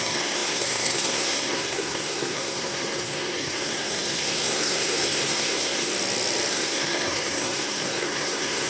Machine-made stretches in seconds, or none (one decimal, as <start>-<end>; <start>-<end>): 0.0-5.9; 6.5-8.7